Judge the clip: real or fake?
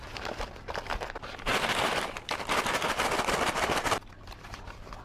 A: fake